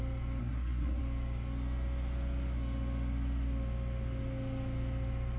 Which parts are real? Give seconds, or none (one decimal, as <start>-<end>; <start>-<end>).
0.0-0.4; 1.0-5.4